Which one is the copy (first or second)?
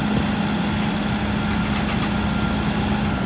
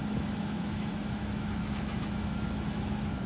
second